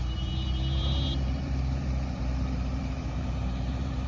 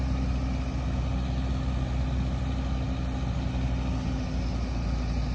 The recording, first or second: second